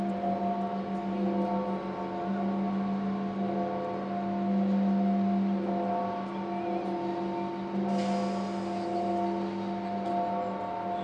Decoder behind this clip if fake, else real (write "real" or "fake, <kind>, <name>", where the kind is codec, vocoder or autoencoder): real